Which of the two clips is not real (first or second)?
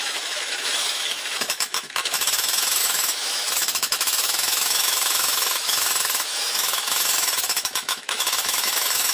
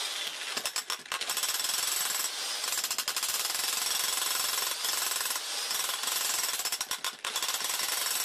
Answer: first